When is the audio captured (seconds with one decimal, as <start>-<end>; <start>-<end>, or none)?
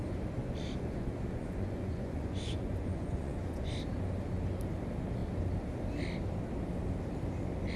0.0-0.4; 3.7-7.8